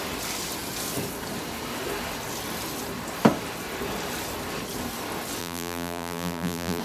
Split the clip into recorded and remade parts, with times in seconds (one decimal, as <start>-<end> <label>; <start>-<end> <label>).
0.0-5.4 recorded; 5.4-6.8 remade